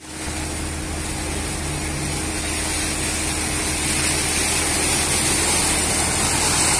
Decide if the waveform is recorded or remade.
recorded